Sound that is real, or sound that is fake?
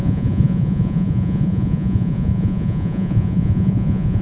fake